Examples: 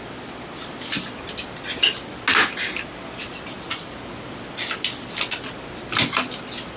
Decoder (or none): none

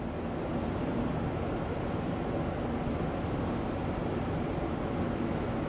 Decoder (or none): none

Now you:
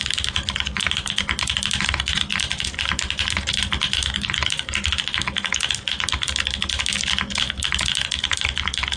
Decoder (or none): none